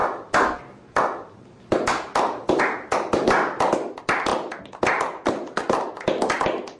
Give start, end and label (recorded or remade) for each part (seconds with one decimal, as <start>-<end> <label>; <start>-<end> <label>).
0.0-6.8 recorded